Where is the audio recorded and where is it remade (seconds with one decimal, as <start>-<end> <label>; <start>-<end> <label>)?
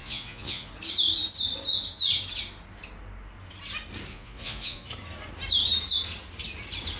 0.0-0.7 remade; 0.7-4.1 recorded; 4.1-4.9 remade; 4.9-7.0 recorded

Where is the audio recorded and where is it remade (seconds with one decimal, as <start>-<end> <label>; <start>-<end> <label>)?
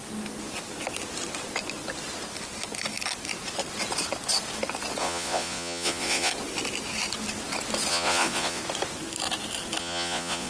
0.0-5.0 recorded; 5.0-6.3 remade; 6.3-7.9 recorded; 7.9-8.6 remade; 8.6-9.8 recorded; 9.8-10.5 remade